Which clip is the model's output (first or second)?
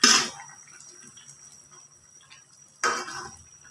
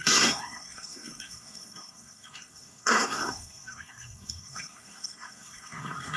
second